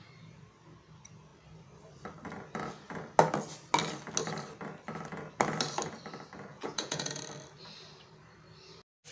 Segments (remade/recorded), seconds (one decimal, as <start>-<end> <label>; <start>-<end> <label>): 0.0-6.5 recorded; 6.5-7.2 remade; 7.2-9.1 recorded